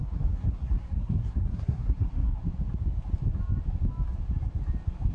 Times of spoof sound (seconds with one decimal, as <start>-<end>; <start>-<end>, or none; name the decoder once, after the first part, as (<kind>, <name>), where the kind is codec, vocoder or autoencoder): 0.0-2.4 (codec, SNAC)